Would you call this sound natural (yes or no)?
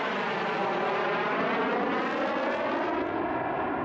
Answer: yes